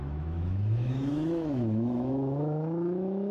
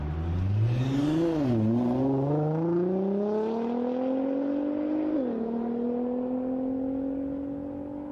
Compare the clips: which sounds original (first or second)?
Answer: second